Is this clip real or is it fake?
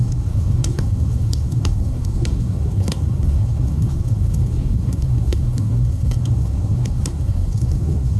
fake